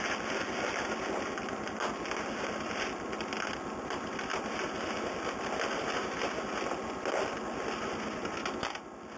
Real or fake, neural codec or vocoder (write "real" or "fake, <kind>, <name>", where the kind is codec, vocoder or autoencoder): real